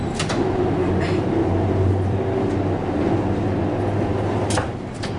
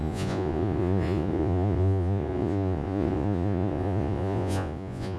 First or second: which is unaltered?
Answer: first